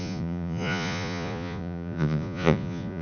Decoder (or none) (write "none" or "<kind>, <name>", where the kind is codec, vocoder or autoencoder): vocoder, Vocos